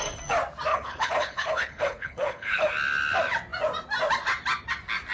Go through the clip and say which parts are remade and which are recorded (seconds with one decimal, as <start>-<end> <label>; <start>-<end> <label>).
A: 0.0-0.7 recorded; 0.7-2.7 remade; 2.7-5.1 recorded